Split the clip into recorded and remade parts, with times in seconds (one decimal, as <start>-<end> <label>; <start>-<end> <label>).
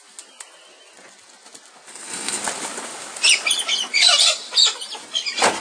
0.0-1.9 recorded; 1.9-2.4 remade; 2.4-5.6 recorded